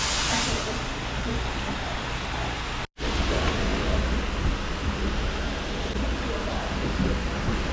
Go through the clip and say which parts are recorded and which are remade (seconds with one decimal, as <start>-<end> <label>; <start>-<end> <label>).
0.0-7.7 recorded